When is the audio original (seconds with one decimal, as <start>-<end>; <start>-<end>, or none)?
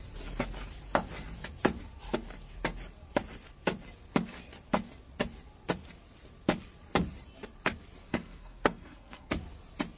0.0-8.1; 9.3-10.0